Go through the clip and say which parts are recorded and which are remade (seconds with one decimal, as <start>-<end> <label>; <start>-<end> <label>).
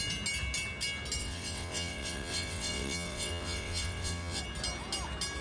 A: 0.0-1.2 recorded; 1.2-4.4 remade; 4.4-5.4 recorded